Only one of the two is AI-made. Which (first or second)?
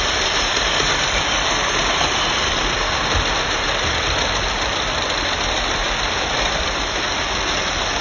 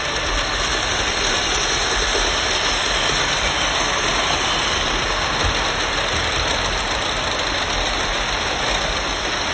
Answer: first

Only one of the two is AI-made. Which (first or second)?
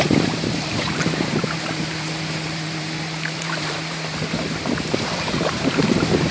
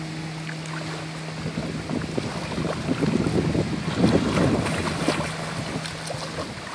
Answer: first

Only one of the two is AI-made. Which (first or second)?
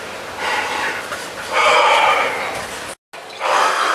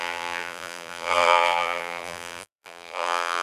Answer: second